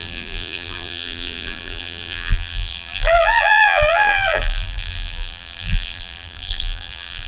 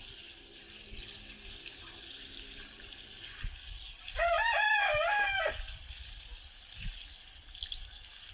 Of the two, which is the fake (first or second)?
first